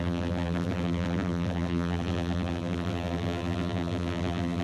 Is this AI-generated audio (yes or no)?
yes